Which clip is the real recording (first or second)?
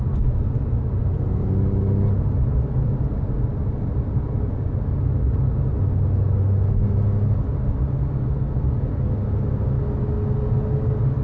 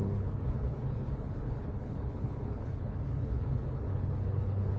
first